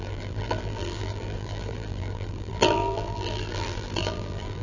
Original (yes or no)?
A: no